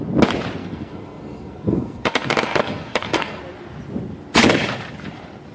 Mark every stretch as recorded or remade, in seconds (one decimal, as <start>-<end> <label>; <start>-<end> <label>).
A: 0.0-0.6 recorded; 0.6-3.4 remade; 3.4-5.5 recorded